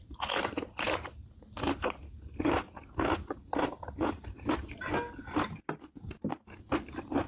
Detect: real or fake real